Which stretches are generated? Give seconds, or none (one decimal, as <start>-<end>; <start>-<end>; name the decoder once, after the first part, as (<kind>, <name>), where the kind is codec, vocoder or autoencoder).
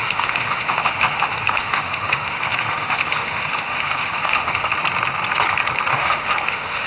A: 0.0-4.7 (autoencoder, DAC-VAE); 5.9-6.9